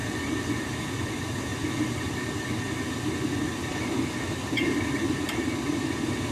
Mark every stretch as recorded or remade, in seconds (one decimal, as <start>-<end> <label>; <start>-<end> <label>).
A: 0.0-6.3 recorded

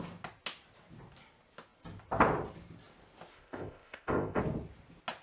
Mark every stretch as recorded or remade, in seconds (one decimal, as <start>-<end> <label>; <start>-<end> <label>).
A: 0.0-3.3 recorded; 3.3-4.4 remade; 4.4-5.2 recorded

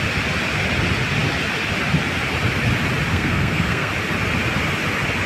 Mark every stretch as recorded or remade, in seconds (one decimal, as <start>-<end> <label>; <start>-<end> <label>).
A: 0.0-3.1 recorded; 3.1-3.9 remade; 3.9-5.3 recorded